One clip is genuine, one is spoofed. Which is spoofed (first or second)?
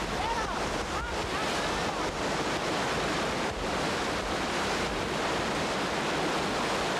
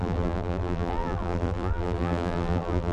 second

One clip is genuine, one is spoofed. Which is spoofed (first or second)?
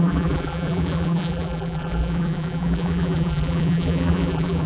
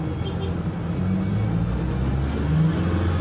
first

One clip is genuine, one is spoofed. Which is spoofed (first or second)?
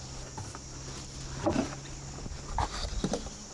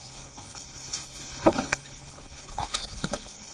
second